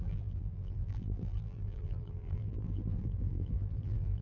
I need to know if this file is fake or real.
fake